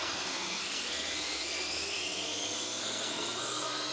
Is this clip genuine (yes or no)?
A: no